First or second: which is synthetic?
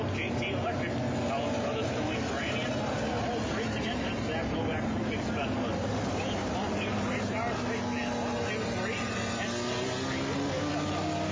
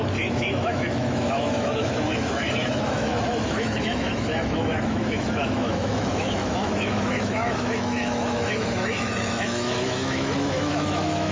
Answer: second